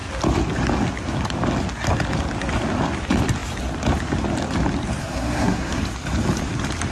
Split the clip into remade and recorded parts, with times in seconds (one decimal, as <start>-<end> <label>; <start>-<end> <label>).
0.0-5.0 recorded; 5.0-5.8 remade; 5.8-6.9 recorded